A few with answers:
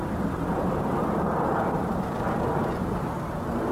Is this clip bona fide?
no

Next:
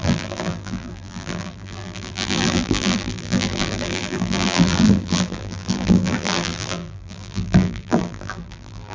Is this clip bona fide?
no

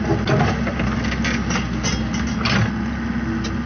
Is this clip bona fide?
yes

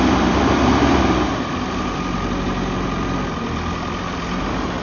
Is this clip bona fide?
no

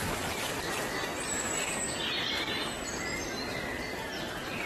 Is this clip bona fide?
yes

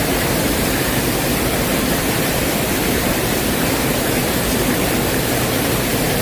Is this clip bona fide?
no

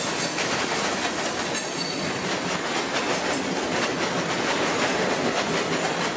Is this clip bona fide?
yes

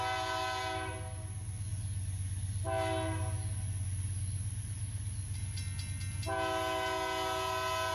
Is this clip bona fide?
yes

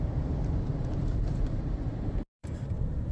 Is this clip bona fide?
no